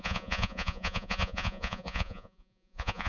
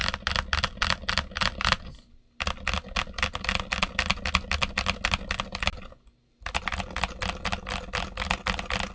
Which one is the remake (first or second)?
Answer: first